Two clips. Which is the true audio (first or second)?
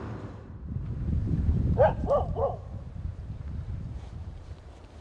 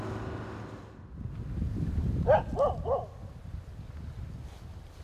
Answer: second